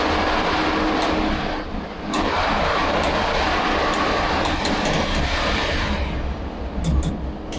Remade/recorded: recorded